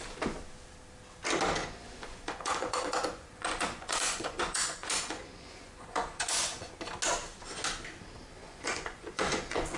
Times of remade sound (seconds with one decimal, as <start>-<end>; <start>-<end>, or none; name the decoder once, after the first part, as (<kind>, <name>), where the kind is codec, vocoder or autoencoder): 1.6-6.7 (vocoder, Vocos); 8.4-9.8